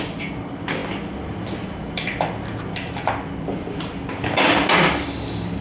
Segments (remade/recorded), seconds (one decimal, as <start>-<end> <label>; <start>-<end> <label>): 0.0-5.6 recorded